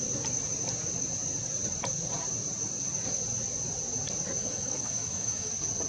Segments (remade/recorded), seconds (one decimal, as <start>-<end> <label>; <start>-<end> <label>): 0.0-4.4 recorded; 4.4-5.5 remade; 5.5-5.9 recorded